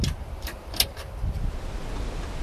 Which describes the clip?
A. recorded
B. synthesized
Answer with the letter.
A